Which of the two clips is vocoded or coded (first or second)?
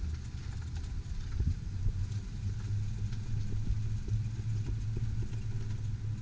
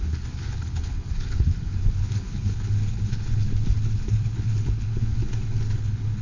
second